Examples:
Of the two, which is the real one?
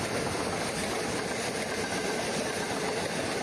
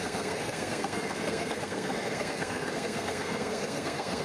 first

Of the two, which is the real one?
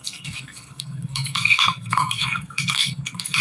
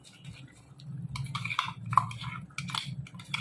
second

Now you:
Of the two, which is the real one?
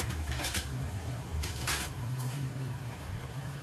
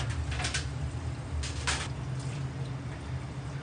second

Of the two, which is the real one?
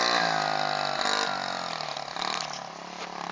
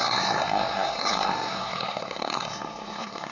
first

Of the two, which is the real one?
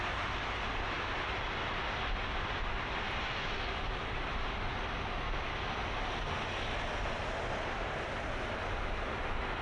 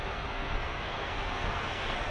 first